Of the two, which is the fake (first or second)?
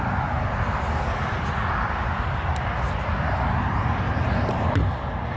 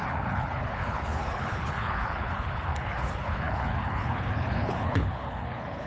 second